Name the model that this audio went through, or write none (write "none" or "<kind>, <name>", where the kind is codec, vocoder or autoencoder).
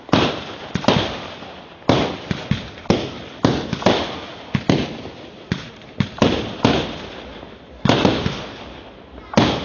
none